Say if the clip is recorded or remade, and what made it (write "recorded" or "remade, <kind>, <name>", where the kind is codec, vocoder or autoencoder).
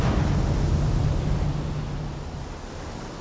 recorded